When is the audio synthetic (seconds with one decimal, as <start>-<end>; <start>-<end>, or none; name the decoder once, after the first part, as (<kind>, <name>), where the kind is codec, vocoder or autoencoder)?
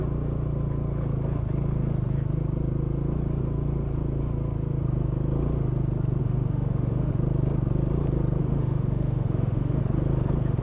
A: 6.2-7.1 (autoencoder, DAC-VAE); 8.4-9.8